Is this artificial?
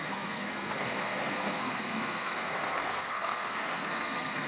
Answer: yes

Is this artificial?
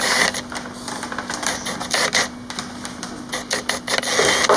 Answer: no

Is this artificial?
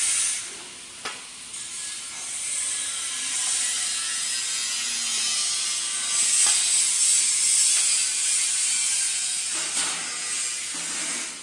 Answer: no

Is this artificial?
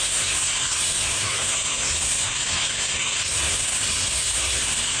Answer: yes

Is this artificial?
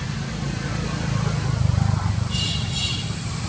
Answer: no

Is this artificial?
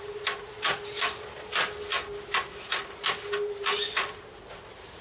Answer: no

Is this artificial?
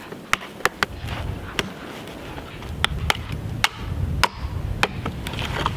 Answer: no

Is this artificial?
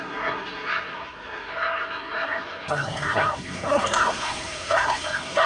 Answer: yes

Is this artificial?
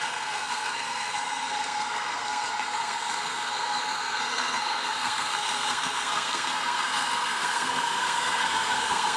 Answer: yes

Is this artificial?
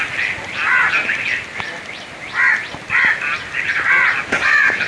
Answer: no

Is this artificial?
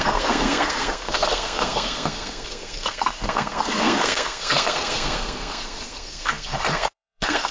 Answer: yes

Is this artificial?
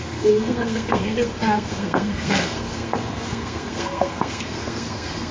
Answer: yes